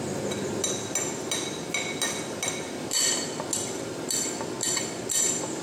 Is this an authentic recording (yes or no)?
yes